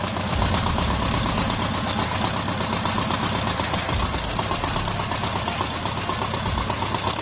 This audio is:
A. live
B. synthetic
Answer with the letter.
A